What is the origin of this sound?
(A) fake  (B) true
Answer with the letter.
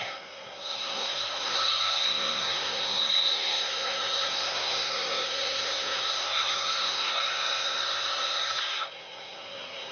A